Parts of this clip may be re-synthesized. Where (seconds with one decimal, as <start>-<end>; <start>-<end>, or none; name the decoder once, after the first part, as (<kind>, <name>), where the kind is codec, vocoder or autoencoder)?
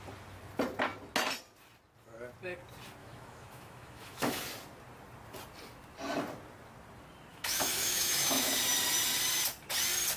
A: 3.0-4.4 (autoencoder, DAC-VAE); 7.3-8.5